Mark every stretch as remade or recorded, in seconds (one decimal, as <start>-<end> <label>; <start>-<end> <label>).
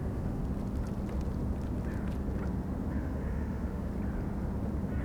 0.0-0.4 remade; 0.4-2.9 recorded; 2.9-3.9 remade; 3.9-5.0 recorded